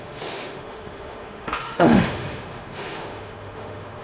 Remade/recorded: remade